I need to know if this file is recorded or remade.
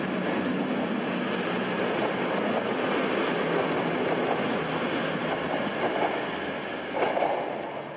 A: recorded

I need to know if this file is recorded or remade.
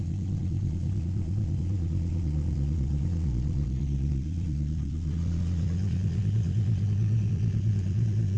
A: remade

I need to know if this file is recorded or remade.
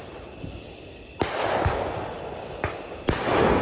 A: recorded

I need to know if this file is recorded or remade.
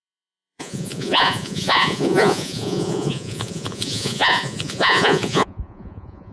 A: remade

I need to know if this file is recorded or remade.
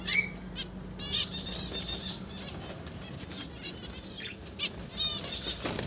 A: recorded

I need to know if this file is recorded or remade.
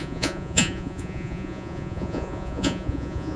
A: remade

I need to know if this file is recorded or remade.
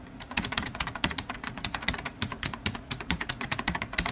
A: remade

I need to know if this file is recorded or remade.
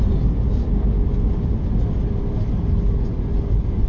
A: recorded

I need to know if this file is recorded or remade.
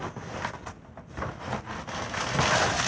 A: recorded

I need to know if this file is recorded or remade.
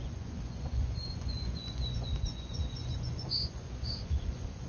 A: remade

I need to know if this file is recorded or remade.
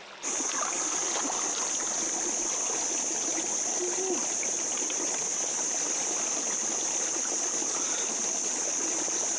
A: recorded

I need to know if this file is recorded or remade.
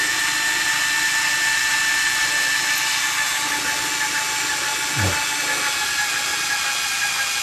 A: recorded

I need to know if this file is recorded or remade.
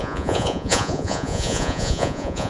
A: remade